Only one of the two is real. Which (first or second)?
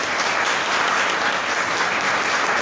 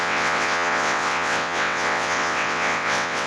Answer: first